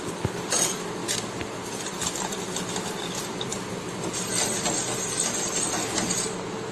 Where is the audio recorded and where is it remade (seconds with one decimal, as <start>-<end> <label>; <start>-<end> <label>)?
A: 0.0-6.7 recorded